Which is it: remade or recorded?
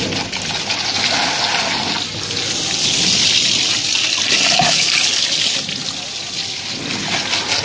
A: recorded